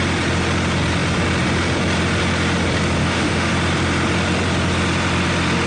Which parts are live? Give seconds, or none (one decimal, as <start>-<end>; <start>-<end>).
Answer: 0.0-3.0; 3.5-5.7